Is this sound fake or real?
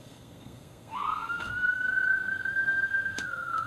fake